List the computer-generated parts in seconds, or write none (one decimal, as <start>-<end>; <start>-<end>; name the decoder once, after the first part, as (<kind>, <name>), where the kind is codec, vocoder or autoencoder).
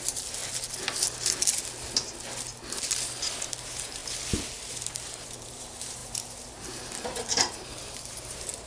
0.0-0.4 (vocoder, BigVGAN v2); 3.6-4.0; 4.7-8.7